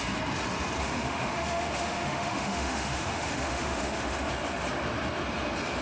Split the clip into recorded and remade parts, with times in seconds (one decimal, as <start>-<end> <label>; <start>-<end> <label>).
0.0-0.8 recorded; 0.8-4.3 remade; 4.3-5.8 recorded

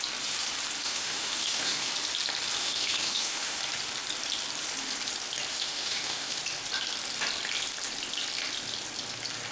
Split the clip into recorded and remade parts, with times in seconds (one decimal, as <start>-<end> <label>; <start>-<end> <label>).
0.0-0.8 recorded; 0.8-1.9 remade; 1.9-2.6 recorded; 2.6-3.6 remade; 3.6-5.5 recorded; 5.5-6.4 remade; 6.4-9.5 recorded

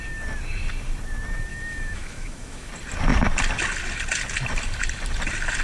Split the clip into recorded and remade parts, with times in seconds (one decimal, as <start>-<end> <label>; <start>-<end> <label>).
0.0-1.5 recorded; 1.5-2.7 remade; 2.7-5.6 recorded

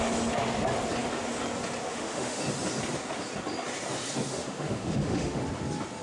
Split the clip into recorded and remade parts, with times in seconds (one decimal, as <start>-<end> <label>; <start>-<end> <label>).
0.0-1.9 recorded; 1.9-2.4 remade; 2.4-4.3 recorded; 4.3-5.4 remade; 5.4-6.0 recorded

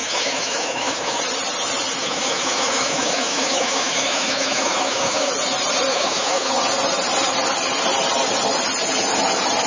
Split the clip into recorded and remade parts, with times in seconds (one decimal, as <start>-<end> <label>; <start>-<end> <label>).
0.0-1.2 remade; 1.2-2.0 recorded; 2.0-5.3 remade; 5.3-5.9 recorded; 5.9-6.5 remade; 6.5-9.7 recorded

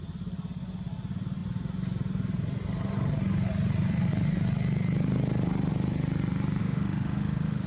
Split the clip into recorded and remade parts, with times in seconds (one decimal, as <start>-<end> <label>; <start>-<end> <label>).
0.0-6.6 recorded; 6.6-7.7 remade

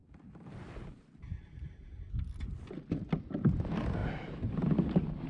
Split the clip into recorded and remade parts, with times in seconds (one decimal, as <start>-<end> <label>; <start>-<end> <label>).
0.0-5.3 recorded

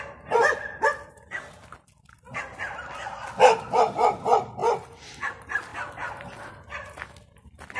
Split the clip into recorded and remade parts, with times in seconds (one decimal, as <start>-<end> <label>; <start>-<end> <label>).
0.0-7.8 recorded